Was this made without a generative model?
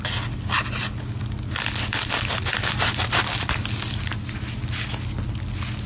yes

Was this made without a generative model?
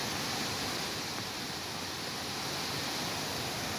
yes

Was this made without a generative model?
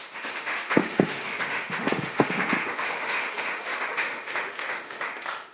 no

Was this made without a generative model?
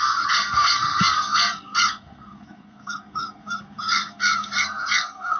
no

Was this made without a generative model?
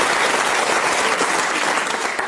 yes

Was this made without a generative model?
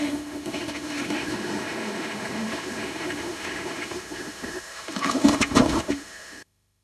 no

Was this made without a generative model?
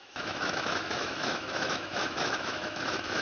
no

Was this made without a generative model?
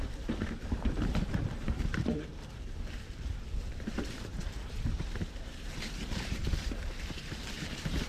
no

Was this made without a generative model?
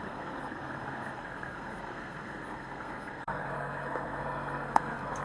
no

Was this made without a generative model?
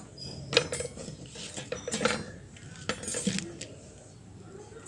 yes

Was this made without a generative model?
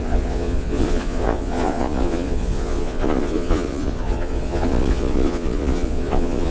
no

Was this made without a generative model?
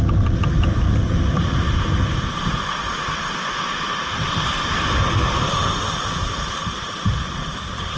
yes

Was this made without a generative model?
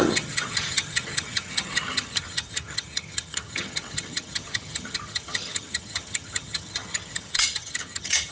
no